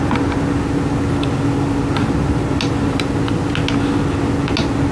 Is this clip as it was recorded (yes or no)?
yes